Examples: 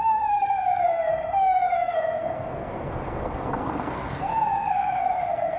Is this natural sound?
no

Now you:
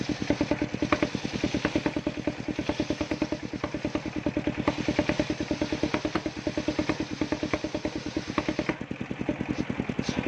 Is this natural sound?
yes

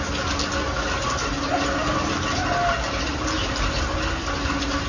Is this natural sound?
yes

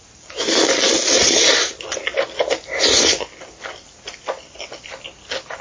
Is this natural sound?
yes